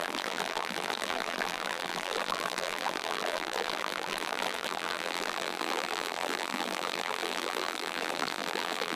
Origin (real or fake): fake